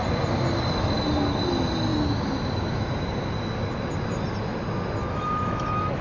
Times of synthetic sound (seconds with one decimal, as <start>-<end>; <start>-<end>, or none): 5.0-6.0